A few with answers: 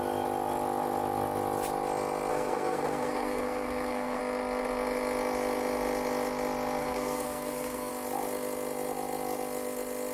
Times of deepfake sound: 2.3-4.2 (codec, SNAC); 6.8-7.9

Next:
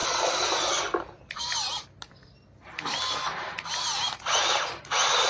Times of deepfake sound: none

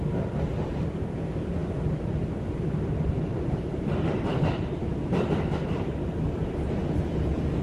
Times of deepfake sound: none

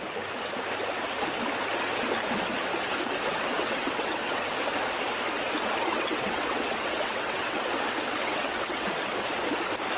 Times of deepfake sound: 3.3-4.5 (vocoder, WaveNeXt); 5.9-7.6; 8.2-8.9

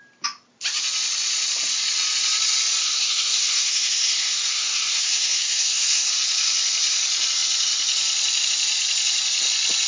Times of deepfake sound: 2.8-6.1 (codec, SNAC)